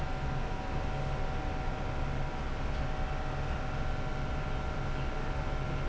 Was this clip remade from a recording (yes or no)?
no